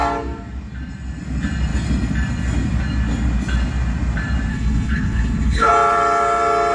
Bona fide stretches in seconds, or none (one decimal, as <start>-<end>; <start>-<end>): 0.0-4.5; 5.7-6.7